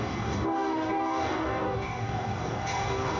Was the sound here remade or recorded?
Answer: remade